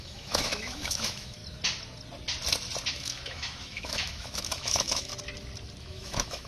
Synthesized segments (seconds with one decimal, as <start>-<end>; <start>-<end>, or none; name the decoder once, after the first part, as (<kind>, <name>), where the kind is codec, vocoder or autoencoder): 0.0-1.4 (autoencoder, DAC-VAE); 2.9-5.1; 5.8-6.5